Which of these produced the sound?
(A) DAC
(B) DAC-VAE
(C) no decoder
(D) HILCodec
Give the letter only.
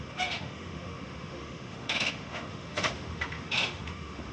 B